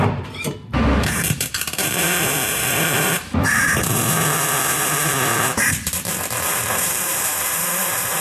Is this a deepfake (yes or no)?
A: yes